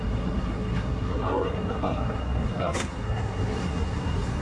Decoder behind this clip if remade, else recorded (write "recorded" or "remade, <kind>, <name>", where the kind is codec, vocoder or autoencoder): remade, codec, SNAC